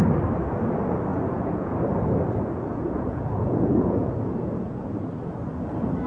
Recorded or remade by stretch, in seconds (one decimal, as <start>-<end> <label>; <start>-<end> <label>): 0.0-1.1 recorded; 1.1-1.7 remade; 1.7-2.7 recorded; 2.7-4.9 remade; 4.9-6.1 recorded